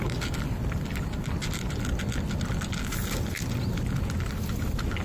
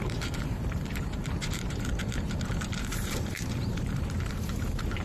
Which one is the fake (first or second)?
second